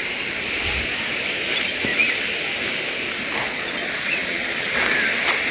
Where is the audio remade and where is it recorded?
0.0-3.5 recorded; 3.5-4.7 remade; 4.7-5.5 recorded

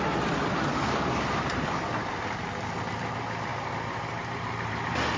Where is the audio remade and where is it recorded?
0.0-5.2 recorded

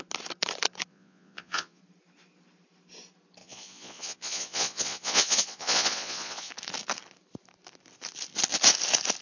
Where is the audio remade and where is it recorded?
0.0-0.9 recorded; 0.9-1.8 remade; 1.8-3.4 recorded; 3.4-6.5 remade; 6.5-9.2 recorded

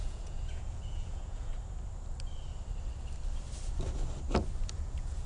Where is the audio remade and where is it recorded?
0.0-1.5 remade; 1.5-4.7 recorded; 4.7-5.3 remade